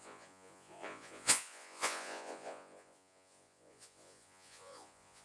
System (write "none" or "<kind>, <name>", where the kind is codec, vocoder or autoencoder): vocoder, Vocos